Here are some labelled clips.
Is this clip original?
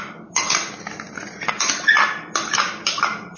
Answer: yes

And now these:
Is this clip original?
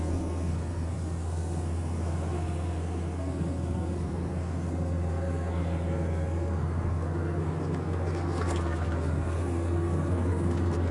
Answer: no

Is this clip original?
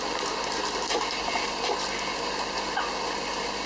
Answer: yes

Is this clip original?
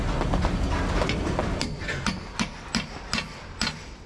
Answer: yes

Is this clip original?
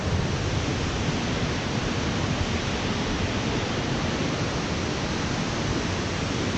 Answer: yes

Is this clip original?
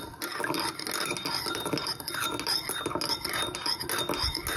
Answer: yes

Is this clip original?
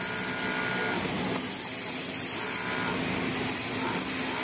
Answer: yes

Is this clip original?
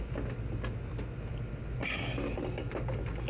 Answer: yes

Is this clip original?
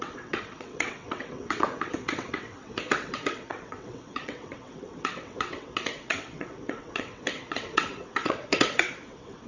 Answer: no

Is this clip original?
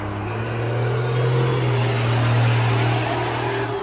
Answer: yes